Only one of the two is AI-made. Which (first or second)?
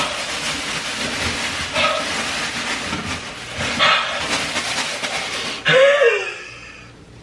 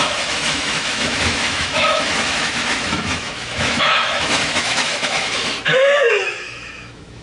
second